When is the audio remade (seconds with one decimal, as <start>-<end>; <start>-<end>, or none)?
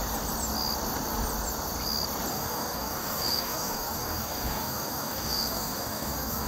2.3-6.5